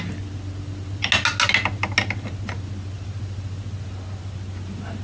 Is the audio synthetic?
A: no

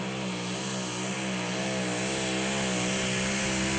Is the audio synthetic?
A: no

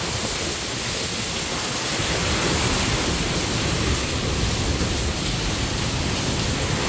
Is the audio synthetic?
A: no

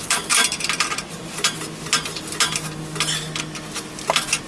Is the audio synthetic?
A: no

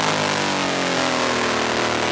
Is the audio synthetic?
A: no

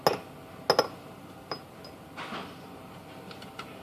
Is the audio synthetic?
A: no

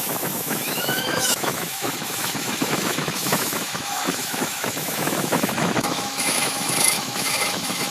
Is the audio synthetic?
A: yes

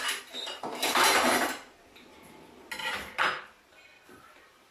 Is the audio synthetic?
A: no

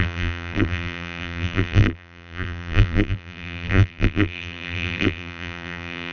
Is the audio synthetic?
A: yes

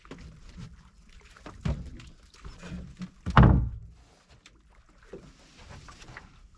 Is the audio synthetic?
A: no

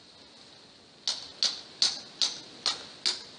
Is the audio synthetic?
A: no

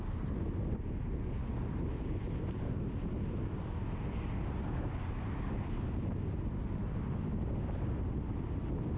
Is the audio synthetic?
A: no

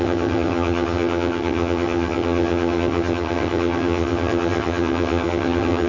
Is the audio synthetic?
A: yes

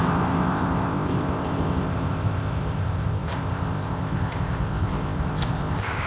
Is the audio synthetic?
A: yes